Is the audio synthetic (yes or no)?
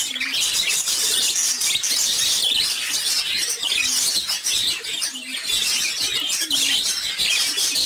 no